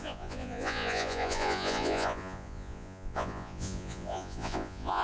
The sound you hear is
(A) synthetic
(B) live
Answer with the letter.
A